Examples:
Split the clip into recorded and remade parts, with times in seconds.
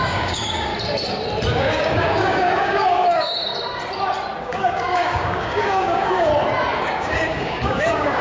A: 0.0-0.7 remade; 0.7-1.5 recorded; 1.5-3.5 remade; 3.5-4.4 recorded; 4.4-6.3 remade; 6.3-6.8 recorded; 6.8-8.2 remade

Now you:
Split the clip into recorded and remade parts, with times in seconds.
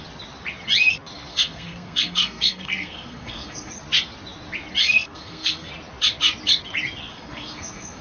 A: 0.0-1.3 recorded; 1.3-3.7 remade; 3.7-4.8 recorded; 4.8-5.7 remade; 5.7-7.1 recorded; 7.1-8.0 remade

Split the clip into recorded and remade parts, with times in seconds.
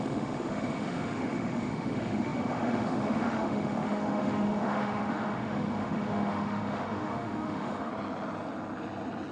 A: 0.0-7.9 remade; 7.9-9.3 recorded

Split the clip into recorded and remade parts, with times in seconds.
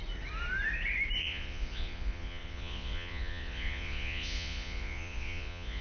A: 0.0-1.2 recorded; 1.2-5.8 remade